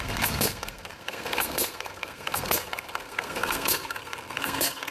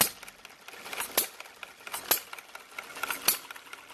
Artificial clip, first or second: first